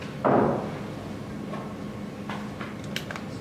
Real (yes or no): yes